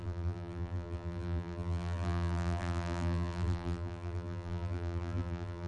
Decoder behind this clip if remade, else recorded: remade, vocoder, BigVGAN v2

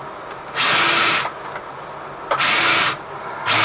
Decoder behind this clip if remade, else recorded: recorded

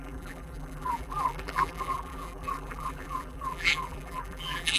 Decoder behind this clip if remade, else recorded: remade, vocoder, BigVGAN v2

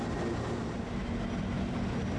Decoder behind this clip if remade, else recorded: recorded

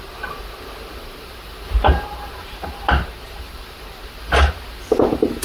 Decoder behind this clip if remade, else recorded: remade, vocoder, BigVGAN v2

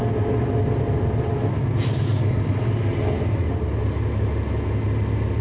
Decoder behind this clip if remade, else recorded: recorded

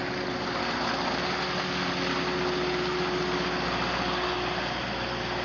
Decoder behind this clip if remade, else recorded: recorded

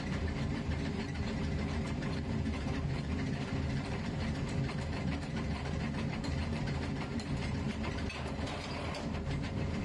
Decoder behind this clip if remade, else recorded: remade, vocoder, BigVGAN v2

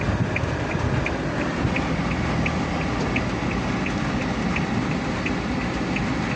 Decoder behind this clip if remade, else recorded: recorded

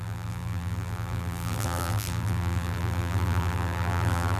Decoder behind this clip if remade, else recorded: remade, vocoder, BigVGAN v2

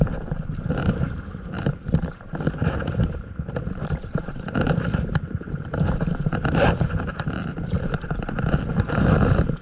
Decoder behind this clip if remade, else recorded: remade, vocoder, BigVGAN v2